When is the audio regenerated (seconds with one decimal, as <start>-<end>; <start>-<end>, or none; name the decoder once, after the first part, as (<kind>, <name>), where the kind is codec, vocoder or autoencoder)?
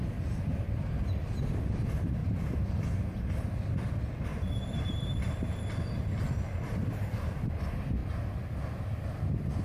2.2-2.8 (vocoder, BigVGAN v2); 4.3-7.6